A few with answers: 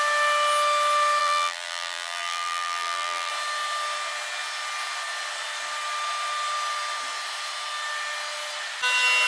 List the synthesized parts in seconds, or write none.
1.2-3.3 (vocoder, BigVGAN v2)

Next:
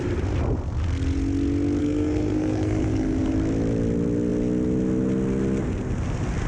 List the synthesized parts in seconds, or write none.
1.8-3.3 (codec, SNAC)

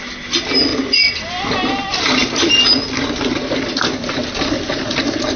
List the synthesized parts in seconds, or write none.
none

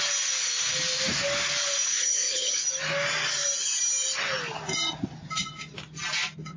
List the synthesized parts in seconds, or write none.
1.9-2.6 (codec, HILCodec)

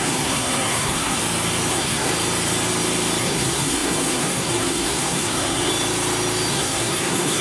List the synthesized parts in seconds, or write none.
0.0-1.2 (codec, SNAC); 1.7-2.1; 3.2-5.7; 6.5-7.4

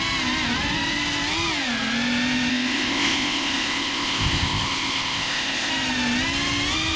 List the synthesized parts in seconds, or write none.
2.5-5.7 (codec, ZipCodec)